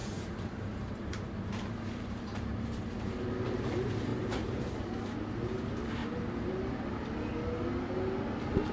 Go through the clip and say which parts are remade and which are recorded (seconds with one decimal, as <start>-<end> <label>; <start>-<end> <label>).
0.0-3.2 remade; 3.2-4.1 recorded; 4.1-4.8 remade; 4.8-6.0 recorded; 6.0-6.5 remade; 6.5-8.7 recorded

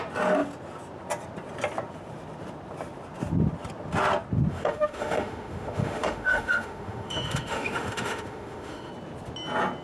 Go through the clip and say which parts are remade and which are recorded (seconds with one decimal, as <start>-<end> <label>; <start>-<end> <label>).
0.0-4.5 recorded; 4.5-8.9 remade; 8.9-9.8 recorded